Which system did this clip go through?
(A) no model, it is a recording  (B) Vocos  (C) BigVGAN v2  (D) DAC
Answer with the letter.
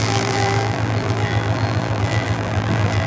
C